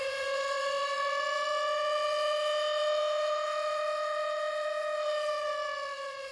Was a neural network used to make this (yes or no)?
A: yes